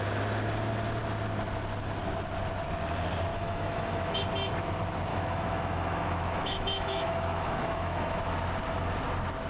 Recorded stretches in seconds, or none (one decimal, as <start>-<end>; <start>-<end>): 0.0-3.3; 4.2-5.1; 8.2-9.5